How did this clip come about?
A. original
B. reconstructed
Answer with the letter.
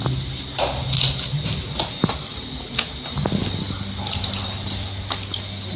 A